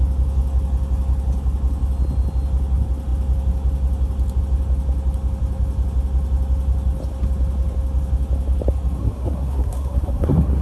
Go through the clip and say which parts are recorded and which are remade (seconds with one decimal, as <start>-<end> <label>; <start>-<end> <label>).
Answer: 0.0-9.0 recorded; 9.0-10.6 remade